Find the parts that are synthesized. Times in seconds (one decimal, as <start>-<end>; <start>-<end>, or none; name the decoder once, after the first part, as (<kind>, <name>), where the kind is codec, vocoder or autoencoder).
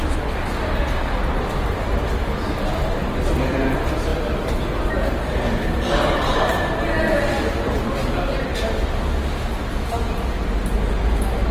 6.3-8.3 (vocoder, BigVGAN v2)